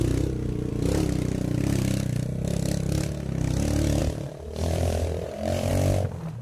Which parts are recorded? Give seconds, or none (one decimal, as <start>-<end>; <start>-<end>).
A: 0.0-4.0; 5.7-6.4